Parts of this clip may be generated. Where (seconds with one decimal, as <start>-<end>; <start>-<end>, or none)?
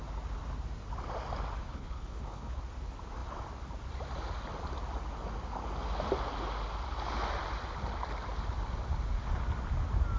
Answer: 1.6-2.6